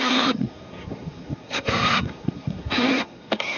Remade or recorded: remade